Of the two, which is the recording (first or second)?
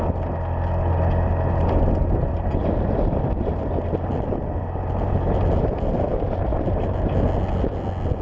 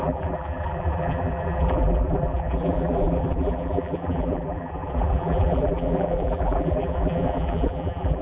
first